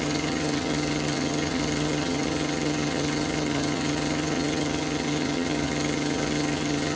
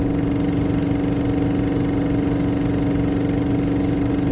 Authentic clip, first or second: second